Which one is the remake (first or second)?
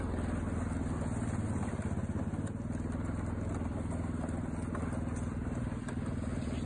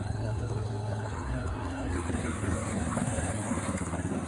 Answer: second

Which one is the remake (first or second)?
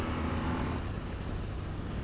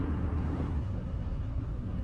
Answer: second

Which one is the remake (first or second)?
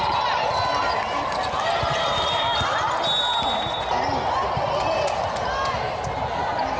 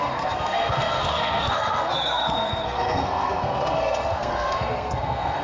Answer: second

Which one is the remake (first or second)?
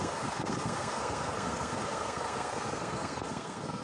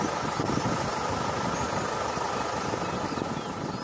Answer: first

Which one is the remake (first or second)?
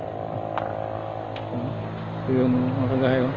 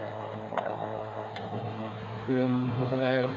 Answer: second